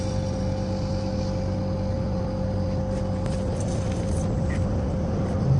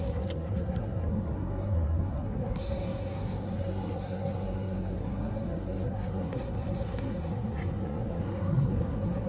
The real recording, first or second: first